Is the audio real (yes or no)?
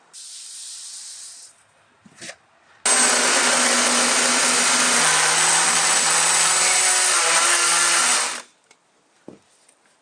yes